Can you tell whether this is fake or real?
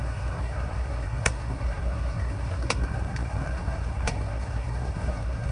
fake